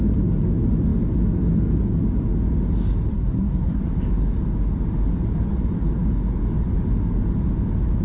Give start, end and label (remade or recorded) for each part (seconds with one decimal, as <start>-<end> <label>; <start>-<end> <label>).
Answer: 0.0-3.1 recorded; 3.1-3.8 remade; 3.8-8.0 recorded